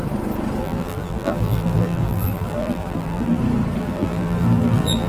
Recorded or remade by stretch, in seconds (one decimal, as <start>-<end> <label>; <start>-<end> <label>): 0.0-0.6 recorded; 0.6-3.4 remade; 3.4-3.8 recorded; 3.8-5.1 remade